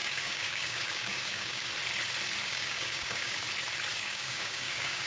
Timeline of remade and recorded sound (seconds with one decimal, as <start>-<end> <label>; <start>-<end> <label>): 0.0-1.7 remade; 1.7-2.4 recorded; 2.4-3.4 remade; 3.4-3.9 recorded; 3.9-5.1 remade